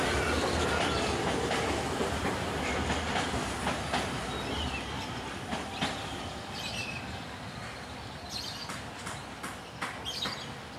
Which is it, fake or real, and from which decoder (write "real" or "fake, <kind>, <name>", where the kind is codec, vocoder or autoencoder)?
real